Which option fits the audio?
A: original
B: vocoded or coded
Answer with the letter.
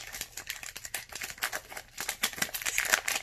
A